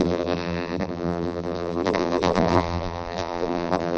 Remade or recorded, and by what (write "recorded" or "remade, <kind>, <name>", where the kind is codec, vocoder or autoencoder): remade, vocoder, BigVGAN v2